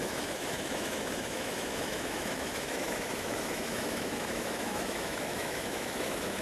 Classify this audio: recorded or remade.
remade